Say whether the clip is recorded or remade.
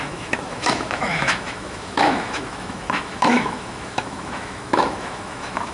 remade